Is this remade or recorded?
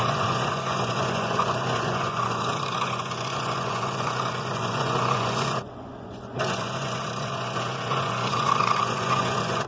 remade